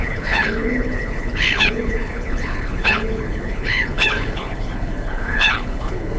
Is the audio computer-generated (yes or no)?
yes